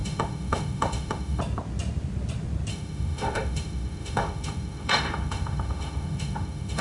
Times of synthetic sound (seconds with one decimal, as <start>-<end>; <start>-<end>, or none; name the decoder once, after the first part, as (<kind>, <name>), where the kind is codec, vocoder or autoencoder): 0.0-1.4 (autoencoder, DAC-VAE); 2.7-6.8

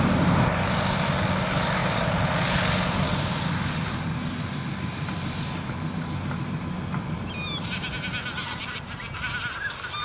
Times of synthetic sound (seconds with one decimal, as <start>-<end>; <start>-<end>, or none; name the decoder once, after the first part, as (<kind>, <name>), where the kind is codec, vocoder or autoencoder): none